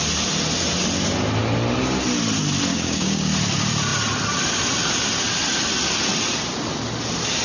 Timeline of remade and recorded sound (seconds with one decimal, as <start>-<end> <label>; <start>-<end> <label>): 0.0-2.7 recorded; 2.7-3.3 remade; 3.3-7.4 recorded

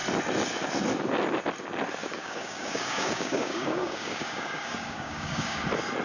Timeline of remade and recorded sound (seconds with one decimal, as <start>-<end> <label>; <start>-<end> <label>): 0.0-2.0 recorded; 2.0-5.6 remade; 5.6-6.0 recorded

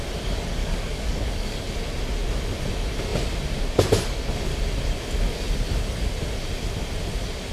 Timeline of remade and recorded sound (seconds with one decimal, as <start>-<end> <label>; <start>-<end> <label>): 0.0-0.6 recorded; 0.6-1.7 remade; 1.7-7.5 recorded

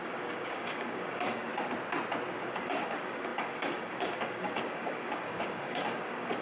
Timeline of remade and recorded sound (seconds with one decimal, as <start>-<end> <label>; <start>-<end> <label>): 0.0-1.5 remade; 1.5-2.5 recorded; 2.5-6.4 remade

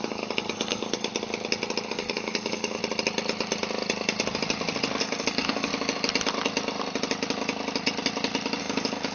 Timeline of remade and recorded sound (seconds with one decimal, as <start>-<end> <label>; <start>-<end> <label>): 0.0-1.1 remade; 1.1-1.9 recorded; 1.9-2.8 remade; 2.8-5.0 recorded; 5.0-5.7 remade; 5.7-8.6 recorded; 8.6-9.1 remade

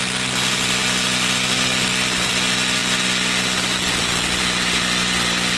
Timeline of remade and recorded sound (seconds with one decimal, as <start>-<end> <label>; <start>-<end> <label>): 0.0-5.6 recorded